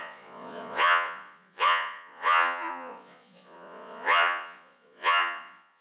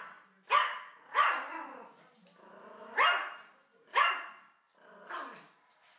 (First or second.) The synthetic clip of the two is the first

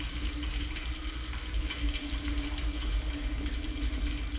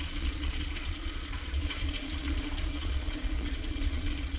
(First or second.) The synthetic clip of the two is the second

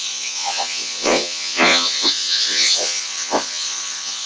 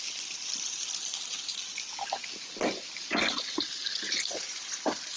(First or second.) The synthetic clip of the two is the first